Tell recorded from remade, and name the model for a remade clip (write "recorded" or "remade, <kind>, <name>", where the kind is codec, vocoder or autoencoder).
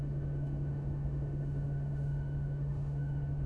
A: remade, autoencoder, DAC-VAE